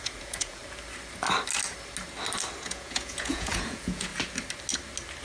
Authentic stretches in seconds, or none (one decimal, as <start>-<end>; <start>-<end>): 0.6-2.6; 4.1-5.2